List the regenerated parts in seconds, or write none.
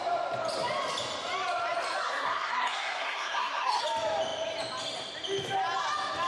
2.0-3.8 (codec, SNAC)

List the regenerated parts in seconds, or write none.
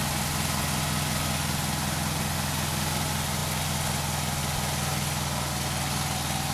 none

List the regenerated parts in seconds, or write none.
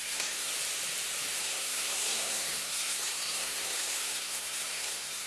0.0-0.5 (codec, SNAC); 1.4-5.3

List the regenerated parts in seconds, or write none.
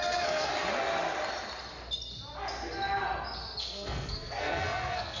0.0-0.5 (codec, SNAC); 3.6-5.2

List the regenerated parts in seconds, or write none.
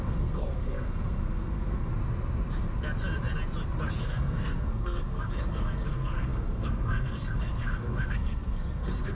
0.0-1.9 (codec, SNAC); 4.0-9.1